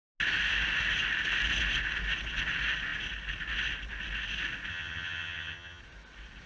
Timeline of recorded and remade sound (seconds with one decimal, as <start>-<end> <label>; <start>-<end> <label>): 0.0-4.7 recorded; 4.7-5.8 remade; 5.8-6.5 recorded